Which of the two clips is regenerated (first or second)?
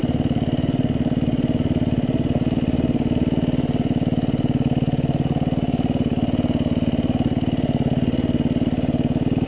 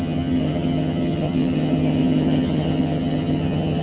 second